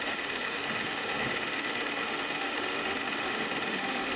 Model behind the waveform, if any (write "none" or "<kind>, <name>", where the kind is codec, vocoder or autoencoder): autoencoder, DAC-VAE